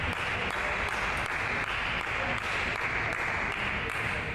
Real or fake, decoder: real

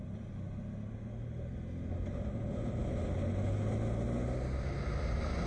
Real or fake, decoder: real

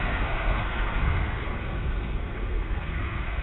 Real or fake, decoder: fake, codec, SNAC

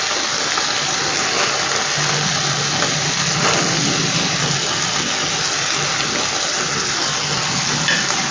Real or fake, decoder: real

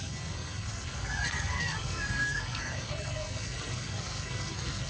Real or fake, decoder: fake, codec, SNAC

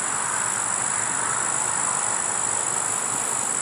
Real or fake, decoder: real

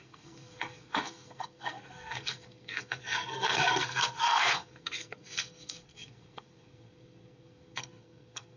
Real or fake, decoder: fake, codec, SNAC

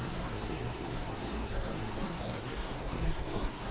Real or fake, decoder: fake, codec, SNAC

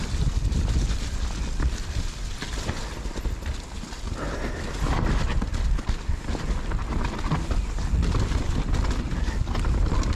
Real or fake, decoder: real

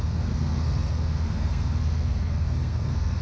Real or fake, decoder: fake, codec, SNAC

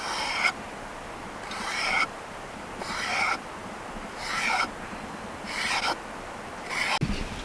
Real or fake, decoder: real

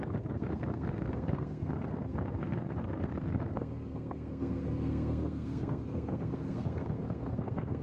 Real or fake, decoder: fake, codec, SNAC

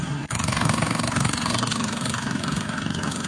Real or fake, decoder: fake, codec, SNAC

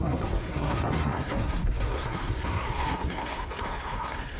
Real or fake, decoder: fake, codec, SNAC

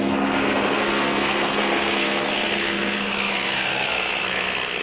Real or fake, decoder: fake, codec, SNAC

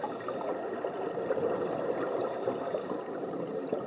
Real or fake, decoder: real